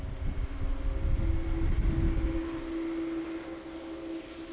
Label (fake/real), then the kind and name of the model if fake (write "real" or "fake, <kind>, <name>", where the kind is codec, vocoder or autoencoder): real